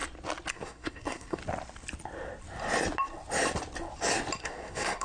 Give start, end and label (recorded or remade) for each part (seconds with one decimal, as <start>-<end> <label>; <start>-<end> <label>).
0.0-0.5 recorded; 0.5-1.4 remade; 1.4-4.4 recorded; 4.4-5.0 remade